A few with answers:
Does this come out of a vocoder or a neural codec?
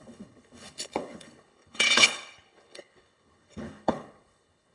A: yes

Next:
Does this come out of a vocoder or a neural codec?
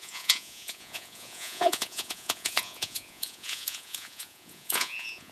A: yes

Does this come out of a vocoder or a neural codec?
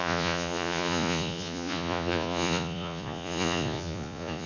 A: yes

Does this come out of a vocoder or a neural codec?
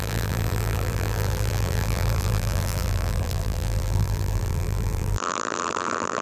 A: yes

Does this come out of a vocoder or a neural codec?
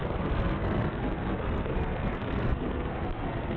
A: yes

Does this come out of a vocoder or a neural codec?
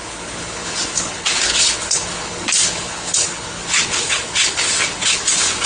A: yes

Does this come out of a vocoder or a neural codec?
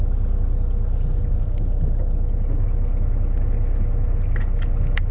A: no